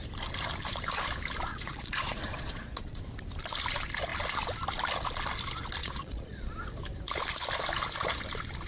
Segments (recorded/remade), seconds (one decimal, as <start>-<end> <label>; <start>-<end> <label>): 0.0-1.5 recorded; 1.5-3.0 remade; 3.0-5.8 recorded; 5.8-6.5 remade; 6.5-8.7 recorded

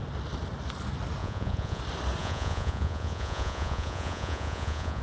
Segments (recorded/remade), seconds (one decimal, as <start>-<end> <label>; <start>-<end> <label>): 0.0-1.2 recorded; 1.2-1.8 remade; 1.8-2.2 recorded; 2.2-5.0 remade

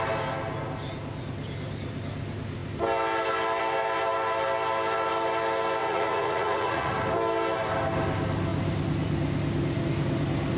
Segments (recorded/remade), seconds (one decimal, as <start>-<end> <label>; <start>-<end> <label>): 0.0-5.8 recorded; 5.8-6.9 remade; 6.9-10.6 recorded

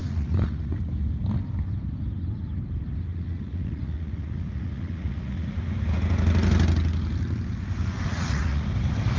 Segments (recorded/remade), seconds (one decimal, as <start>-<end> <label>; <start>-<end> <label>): 0.0-0.9 remade; 0.9-3.1 recorded; 3.1-5.5 remade; 5.5-8.1 recorded; 8.1-8.7 remade; 8.7-9.2 recorded

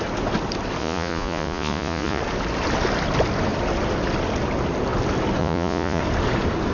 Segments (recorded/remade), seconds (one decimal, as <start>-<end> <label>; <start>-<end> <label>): 0.0-0.8 recorded; 0.8-2.2 remade; 2.2-5.4 recorded; 5.4-6.0 remade; 6.0-6.7 recorded

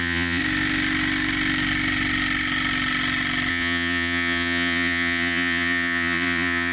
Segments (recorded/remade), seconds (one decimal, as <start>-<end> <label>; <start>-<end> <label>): 0.0-0.4 remade; 0.4-3.5 recorded; 3.5-6.7 remade

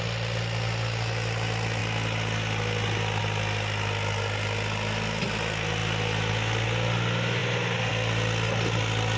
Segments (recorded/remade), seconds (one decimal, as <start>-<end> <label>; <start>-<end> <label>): 0.0-9.2 recorded